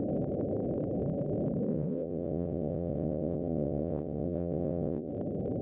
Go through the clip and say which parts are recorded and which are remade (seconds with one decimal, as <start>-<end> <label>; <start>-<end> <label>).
0.0-1.7 recorded; 1.7-5.1 remade; 5.1-5.6 recorded